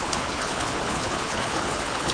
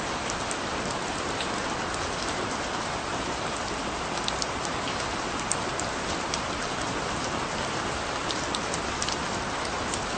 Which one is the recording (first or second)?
second